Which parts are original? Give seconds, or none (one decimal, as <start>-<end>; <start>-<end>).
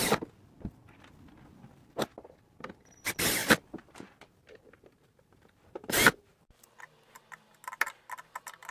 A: 0.0-3.4; 6.8-8.7